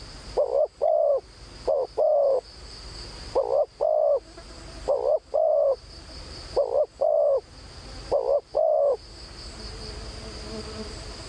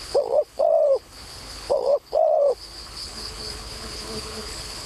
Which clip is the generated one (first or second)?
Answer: second